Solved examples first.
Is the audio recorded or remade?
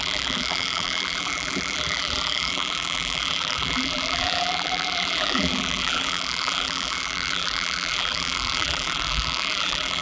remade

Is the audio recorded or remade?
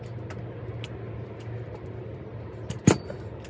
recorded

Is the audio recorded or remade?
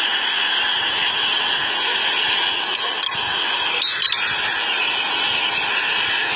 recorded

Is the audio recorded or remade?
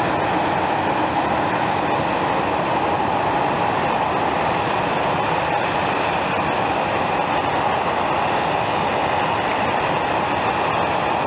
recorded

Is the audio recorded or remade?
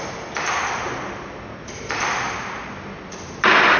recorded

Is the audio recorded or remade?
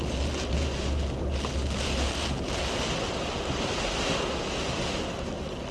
recorded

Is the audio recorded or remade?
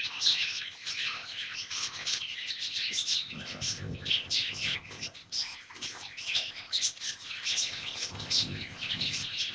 remade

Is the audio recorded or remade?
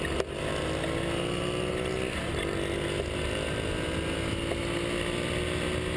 recorded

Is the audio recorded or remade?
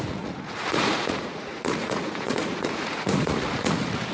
remade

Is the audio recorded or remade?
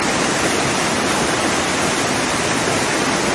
recorded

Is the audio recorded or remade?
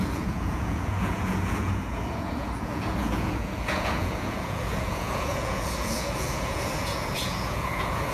remade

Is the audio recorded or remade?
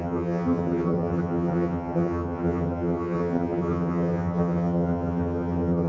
remade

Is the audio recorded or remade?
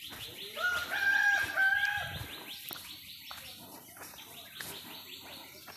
recorded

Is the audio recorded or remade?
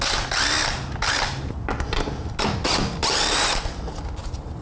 recorded